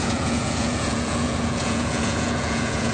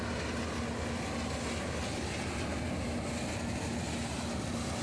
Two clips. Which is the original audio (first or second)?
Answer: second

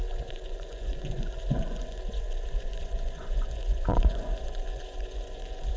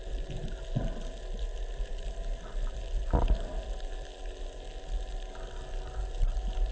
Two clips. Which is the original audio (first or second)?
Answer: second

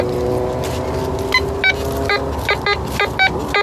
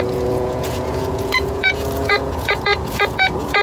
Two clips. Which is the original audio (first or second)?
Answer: first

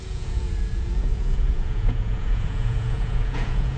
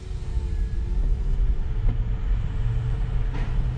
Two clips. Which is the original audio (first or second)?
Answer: second